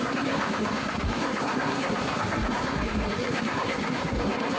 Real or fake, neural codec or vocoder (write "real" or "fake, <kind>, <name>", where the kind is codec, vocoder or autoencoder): fake, codec, SNAC